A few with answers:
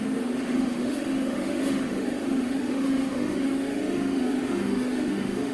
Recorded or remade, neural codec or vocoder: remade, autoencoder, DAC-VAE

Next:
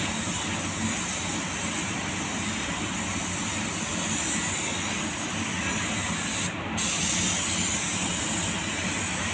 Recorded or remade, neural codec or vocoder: recorded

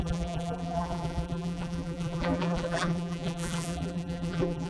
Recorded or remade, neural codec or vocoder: remade, vocoder, BigVGAN v2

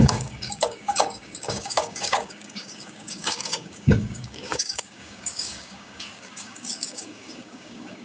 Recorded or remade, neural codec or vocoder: remade, codec, DAC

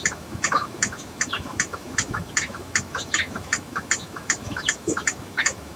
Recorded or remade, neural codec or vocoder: remade, autoencoder, DAC-VAE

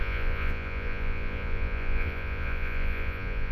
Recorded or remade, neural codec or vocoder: remade, vocoder, Vocos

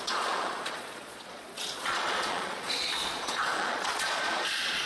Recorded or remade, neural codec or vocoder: remade, vocoder, Vocos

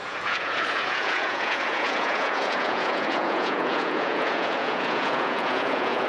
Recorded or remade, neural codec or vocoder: remade, vocoder, Vocos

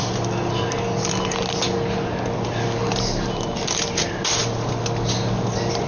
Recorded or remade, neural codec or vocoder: recorded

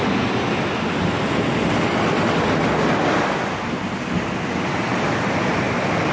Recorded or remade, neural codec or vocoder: recorded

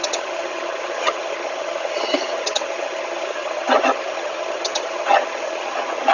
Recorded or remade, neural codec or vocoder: remade, vocoder, HiFi-GAN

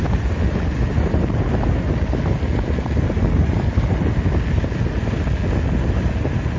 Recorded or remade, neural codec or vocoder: recorded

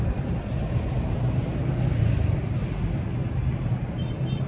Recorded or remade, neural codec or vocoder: recorded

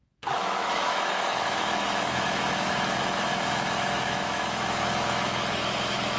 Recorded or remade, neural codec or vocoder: remade, autoencoder, DAC-VAE